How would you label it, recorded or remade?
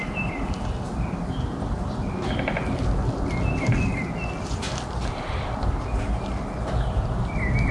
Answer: recorded